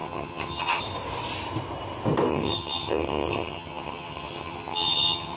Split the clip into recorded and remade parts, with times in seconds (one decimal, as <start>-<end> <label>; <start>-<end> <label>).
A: 0.0-0.8 remade; 0.8-2.3 recorded; 2.3-5.4 remade